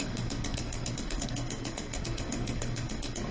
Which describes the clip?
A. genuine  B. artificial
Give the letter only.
B